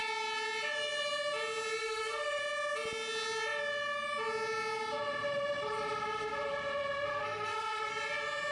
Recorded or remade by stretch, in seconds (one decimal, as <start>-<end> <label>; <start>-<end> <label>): 0.0-1.8 recorded; 1.8-2.4 remade; 2.4-7.1 recorded; 7.1-7.9 remade; 7.9-8.5 recorded